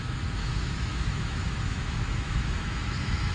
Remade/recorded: remade